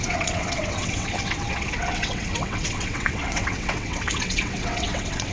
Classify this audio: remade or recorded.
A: remade